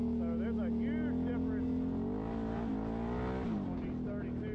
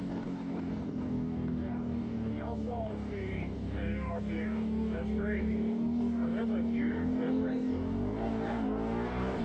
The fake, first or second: second